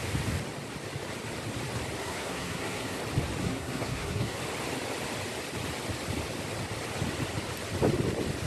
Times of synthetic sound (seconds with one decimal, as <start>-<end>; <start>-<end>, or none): 2.0-3.0; 3.4-4.4

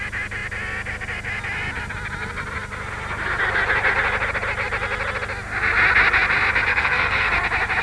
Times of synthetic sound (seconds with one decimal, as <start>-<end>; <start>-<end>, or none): 6.7-7.3

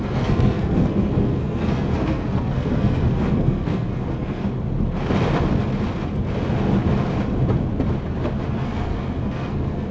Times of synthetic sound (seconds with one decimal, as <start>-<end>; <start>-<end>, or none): 0.0-4.4; 8.5-9.9

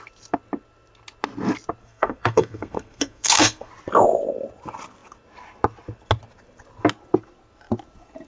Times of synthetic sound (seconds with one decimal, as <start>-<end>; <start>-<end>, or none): 1.8-3.7

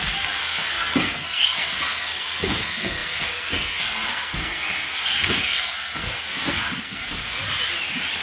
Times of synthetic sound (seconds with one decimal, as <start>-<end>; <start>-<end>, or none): 0.0-7.4

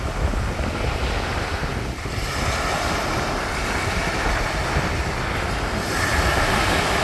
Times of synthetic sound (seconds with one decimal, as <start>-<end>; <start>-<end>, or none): none

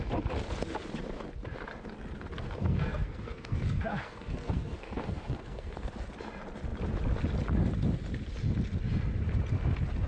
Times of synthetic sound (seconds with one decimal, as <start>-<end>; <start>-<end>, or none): 2.4-5.9

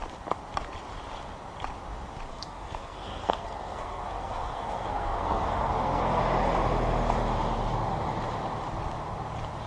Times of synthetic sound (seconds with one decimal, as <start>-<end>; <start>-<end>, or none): 2.3-6.2